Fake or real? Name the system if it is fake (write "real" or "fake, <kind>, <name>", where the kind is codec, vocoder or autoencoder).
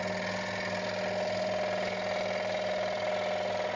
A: real